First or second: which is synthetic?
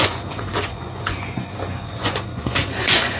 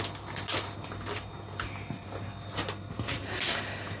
first